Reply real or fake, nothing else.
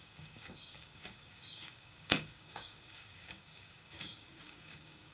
fake